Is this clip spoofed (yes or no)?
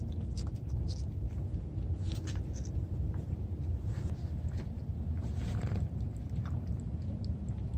no